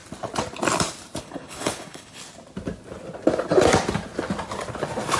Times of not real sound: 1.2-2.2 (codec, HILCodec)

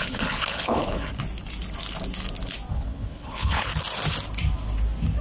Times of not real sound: 0.0-1.1 (codec, HILCodec); 2.7-3.7

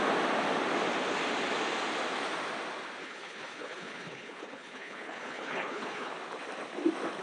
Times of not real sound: 3.0-6.1 (codec, HILCodec)

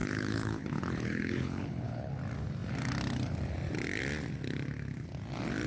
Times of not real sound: 0.0-2.1 (codec, HILCodec)

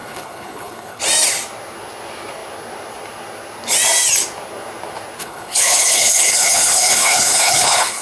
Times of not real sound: 0.0-1.0 (codec, HILCodec); 5.2-8.0